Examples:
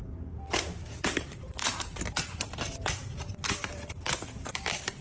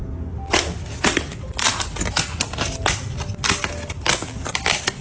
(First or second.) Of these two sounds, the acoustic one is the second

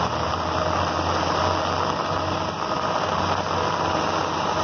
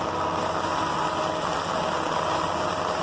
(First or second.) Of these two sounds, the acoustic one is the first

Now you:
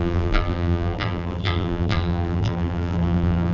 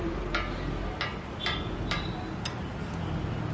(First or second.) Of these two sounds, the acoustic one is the second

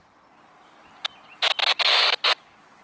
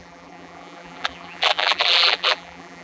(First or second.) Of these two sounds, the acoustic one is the first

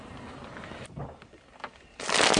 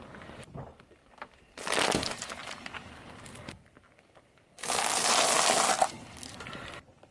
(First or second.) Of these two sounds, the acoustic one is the first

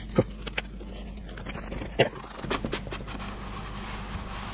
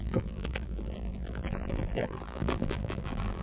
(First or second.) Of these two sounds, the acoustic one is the first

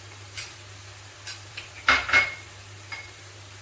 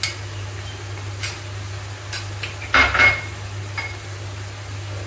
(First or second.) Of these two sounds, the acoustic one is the second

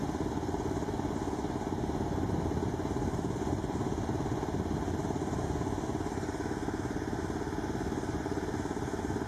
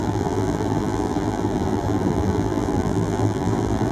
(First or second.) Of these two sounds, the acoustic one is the first